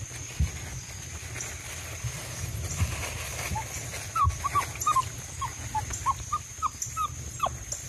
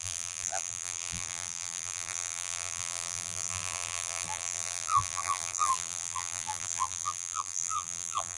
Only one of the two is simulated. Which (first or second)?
second